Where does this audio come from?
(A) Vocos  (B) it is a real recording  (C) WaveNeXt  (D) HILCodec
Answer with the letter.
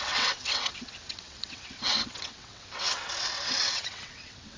C